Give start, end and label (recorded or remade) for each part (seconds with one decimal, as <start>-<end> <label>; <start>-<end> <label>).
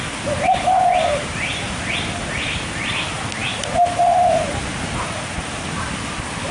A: 0.0-6.5 recorded